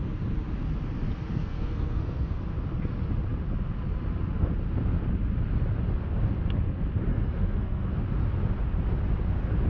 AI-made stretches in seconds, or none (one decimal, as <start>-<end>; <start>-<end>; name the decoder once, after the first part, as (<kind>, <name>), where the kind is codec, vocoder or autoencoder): 1.3-2.4 (codec, SNAC); 7.1-7.8